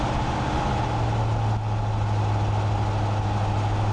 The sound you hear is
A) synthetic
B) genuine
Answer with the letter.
B